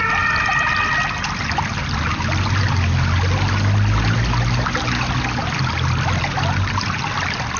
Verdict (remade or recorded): recorded